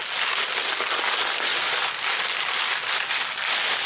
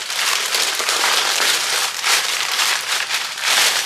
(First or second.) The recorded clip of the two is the first